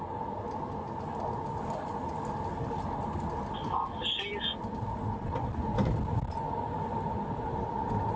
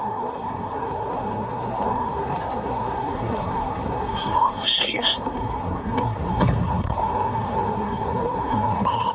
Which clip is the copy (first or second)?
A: second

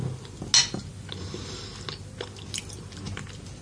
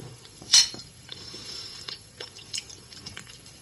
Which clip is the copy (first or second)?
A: second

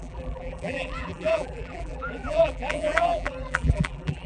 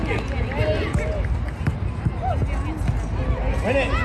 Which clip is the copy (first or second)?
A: first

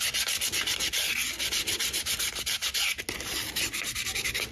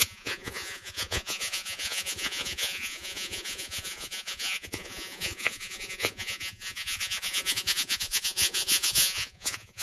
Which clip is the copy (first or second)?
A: second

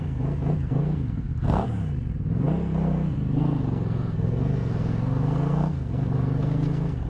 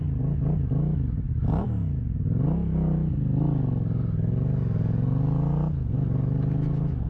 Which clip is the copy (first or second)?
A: first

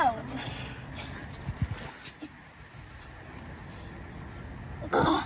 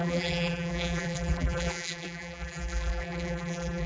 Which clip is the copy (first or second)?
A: second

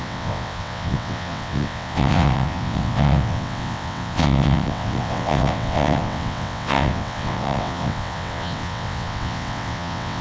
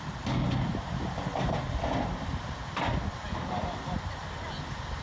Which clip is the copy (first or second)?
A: first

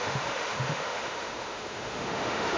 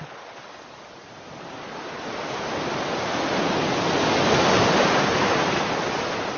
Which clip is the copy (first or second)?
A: first